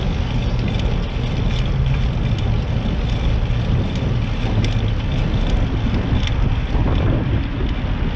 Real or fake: real